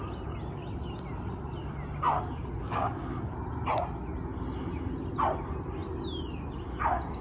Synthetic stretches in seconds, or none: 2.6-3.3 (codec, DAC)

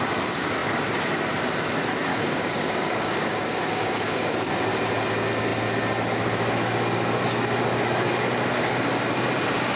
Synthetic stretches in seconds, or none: 2.1-4.5 (codec, DAC)

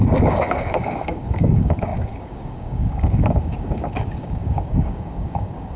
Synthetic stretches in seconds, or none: 0.0-5.8 (codec, DAC)

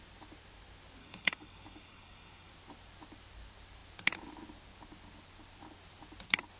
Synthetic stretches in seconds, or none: 1.0-2.5 (codec, DAC)

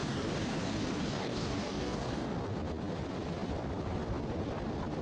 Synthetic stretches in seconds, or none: 0.0-2.3 (codec, DAC)

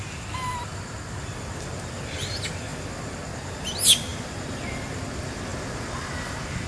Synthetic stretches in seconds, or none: none